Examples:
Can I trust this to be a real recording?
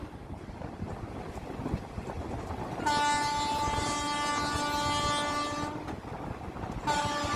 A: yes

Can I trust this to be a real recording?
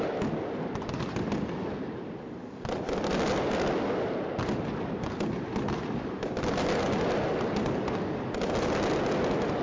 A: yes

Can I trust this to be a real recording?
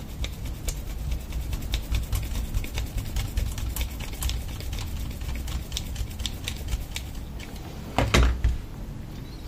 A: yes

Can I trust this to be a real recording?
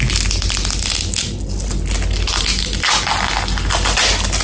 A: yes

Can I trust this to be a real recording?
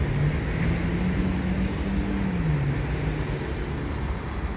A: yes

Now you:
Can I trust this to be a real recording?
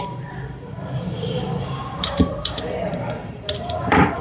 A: no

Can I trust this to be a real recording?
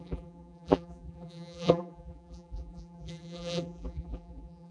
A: no